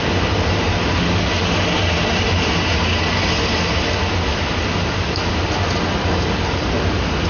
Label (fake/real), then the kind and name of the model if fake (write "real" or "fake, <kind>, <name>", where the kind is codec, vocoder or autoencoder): real